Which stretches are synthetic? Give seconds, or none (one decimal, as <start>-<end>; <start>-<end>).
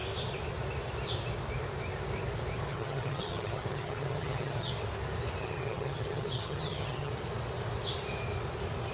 2.7-4.7; 5.4-7.1